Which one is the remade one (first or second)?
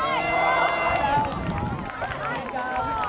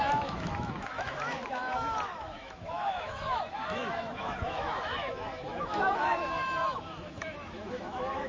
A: second